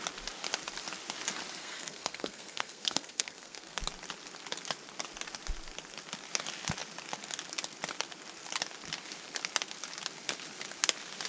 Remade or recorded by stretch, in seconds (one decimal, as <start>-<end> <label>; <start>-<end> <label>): 0.0-1.6 recorded; 1.6-3.8 remade; 3.8-11.3 recorded